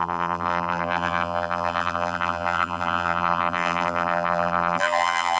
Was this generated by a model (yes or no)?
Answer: yes